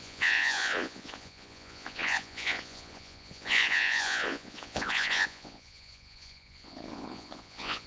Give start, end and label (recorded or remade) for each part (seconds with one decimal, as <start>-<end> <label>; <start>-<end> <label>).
0.0-7.9 remade